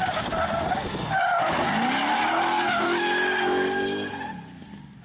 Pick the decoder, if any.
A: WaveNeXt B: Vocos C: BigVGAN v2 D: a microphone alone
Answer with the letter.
D